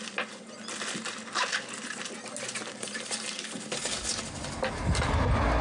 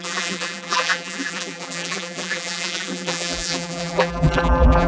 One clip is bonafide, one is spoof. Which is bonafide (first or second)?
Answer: first